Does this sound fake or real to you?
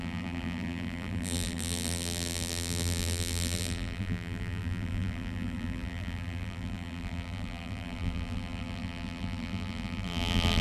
fake